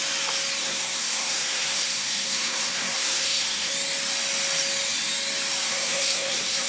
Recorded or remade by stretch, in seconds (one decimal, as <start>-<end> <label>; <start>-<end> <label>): 0.0-0.6 recorded; 0.6-3.7 remade; 3.7-5.6 recorded; 5.6-6.7 remade